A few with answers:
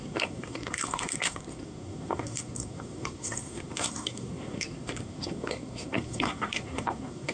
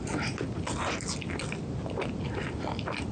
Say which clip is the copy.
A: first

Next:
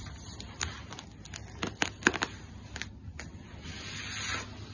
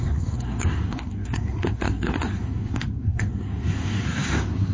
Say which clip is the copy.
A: second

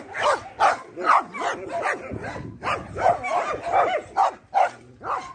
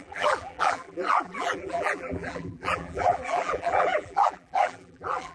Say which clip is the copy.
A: second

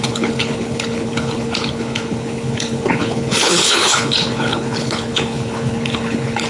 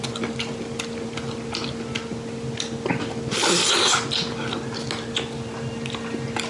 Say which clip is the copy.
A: first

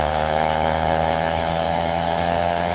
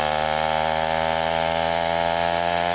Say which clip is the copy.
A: first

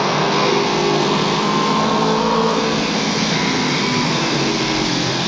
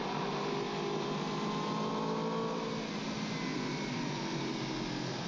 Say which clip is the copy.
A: first